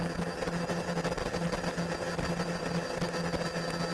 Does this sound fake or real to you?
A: real